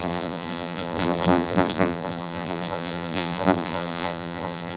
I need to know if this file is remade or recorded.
remade